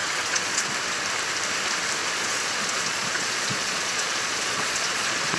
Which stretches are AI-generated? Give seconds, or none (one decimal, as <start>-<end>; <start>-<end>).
0.0-0.6; 2.0-5.4